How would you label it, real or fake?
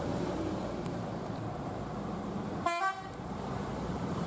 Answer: fake